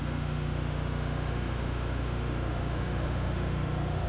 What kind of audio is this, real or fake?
fake